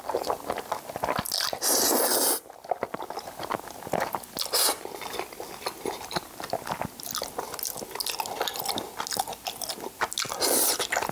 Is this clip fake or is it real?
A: real